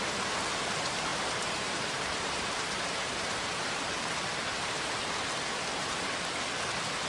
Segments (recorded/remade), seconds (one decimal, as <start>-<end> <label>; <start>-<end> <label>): 0.0-1.1 recorded; 1.1-5.0 remade; 5.0-5.8 recorded; 5.8-6.3 remade; 6.3-7.1 recorded